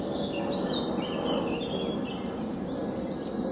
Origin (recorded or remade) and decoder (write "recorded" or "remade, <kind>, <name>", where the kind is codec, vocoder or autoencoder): recorded